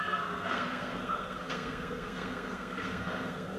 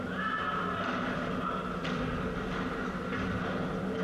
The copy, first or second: first